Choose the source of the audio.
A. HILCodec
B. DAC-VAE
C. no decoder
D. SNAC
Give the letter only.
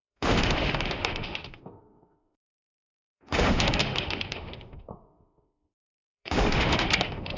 B